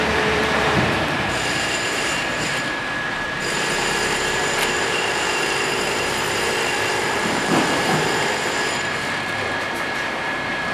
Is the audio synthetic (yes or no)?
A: yes